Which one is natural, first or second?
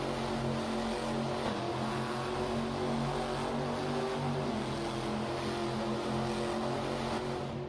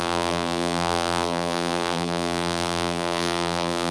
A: first